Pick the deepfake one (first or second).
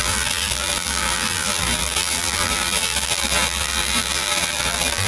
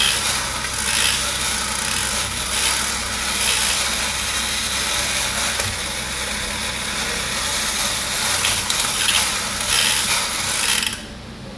first